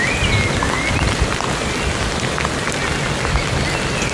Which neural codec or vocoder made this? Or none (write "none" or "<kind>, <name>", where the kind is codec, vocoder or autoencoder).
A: none